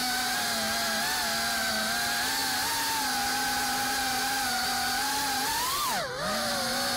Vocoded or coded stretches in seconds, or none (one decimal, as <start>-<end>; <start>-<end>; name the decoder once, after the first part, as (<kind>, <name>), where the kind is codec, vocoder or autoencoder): none